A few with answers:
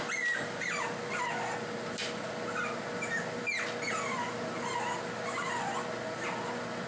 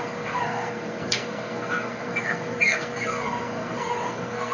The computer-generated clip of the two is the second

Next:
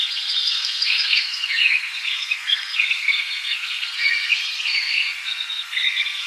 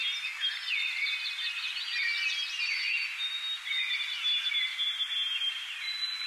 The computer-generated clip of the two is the first